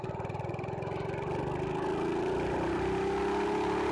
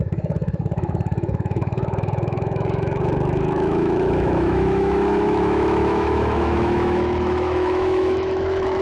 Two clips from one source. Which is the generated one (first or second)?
second